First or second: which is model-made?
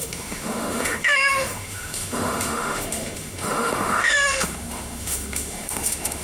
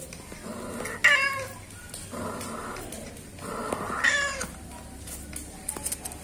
first